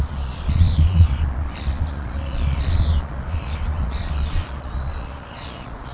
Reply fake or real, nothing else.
fake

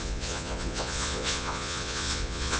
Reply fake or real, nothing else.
fake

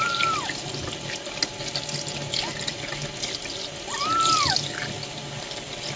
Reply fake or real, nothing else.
real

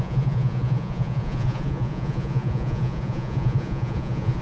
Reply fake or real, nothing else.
fake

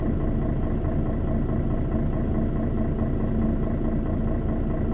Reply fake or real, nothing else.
real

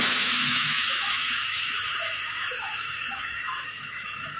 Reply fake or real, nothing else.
fake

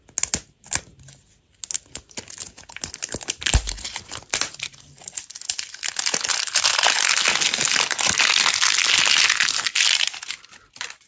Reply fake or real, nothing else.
real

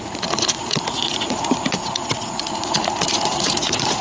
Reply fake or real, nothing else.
fake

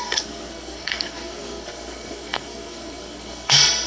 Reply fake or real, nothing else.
fake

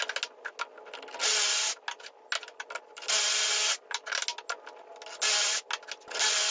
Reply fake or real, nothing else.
real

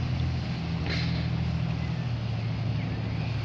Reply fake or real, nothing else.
real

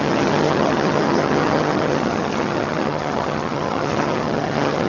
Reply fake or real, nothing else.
fake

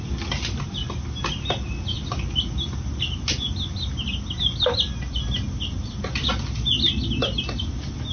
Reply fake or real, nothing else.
real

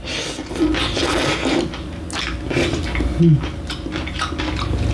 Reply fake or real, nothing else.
real